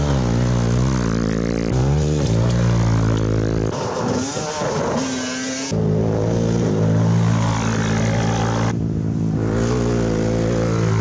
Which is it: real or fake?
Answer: real